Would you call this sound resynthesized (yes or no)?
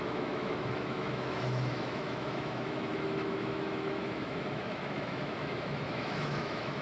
yes